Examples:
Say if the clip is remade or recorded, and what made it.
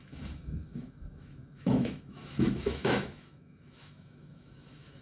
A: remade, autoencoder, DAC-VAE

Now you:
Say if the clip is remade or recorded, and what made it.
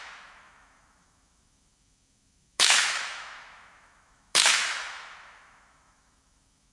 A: remade, autoencoder, DAC-VAE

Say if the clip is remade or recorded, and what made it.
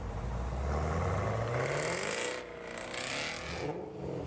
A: recorded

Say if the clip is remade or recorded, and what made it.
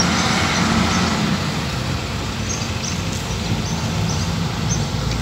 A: recorded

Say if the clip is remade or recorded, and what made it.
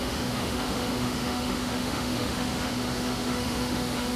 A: remade, autoencoder, DAC-VAE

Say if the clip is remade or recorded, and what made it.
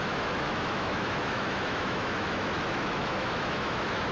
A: remade, autoencoder, DAC-VAE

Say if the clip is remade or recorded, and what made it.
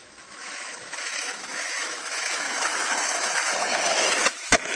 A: remade, autoencoder, DAC-VAE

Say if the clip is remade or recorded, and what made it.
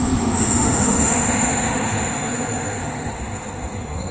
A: remade, autoencoder, DAC-VAE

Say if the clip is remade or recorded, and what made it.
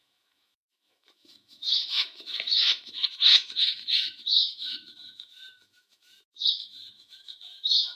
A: remade, autoencoder, DAC-VAE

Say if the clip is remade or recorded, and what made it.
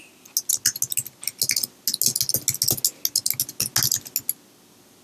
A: recorded